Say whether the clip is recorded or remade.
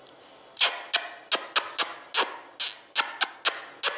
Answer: recorded